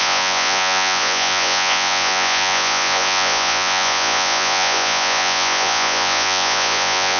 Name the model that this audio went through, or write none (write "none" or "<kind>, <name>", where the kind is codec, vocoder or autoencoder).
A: vocoder, Vocos